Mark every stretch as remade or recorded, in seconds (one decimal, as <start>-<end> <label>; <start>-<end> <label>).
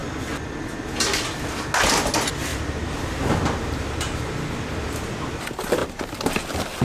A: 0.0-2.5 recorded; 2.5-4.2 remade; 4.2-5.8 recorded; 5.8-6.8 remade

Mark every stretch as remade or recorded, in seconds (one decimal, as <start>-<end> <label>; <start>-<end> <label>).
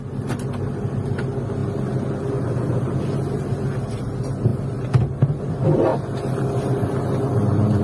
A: 0.0-7.8 recorded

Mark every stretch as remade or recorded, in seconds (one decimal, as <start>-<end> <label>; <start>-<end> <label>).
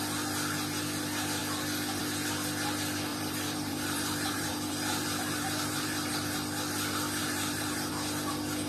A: 0.0-3.1 recorded; 3.1-6.1 remade; 6.1-7.2 recorded; 7.2-7.9 remade; 7.9-8.7 recorded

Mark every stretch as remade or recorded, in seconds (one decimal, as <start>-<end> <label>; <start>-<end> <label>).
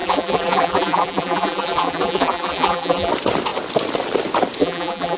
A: 0.0-3.1 remade; 3.1-4.6 recorded; 4.6-5.2 remade